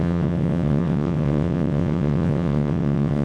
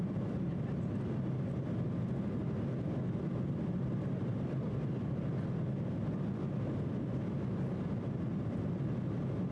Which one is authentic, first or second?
second